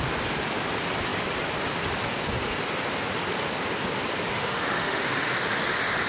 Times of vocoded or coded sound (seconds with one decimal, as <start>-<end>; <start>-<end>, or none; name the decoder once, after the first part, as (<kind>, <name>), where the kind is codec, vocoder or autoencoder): 4.3-5.3 (autoencoder, DAC-VAE)